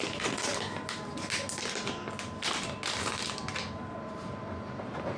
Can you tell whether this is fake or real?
real